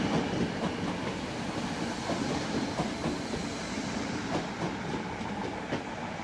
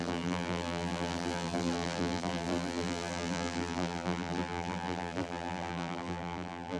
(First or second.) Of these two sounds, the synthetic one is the second